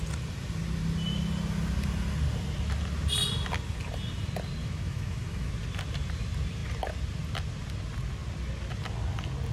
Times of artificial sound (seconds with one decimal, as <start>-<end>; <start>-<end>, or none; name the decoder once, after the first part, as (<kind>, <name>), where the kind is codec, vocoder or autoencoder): 4.6-5.5 (autoencoder, DAC-VAE)